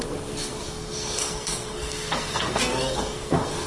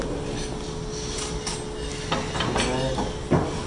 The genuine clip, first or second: second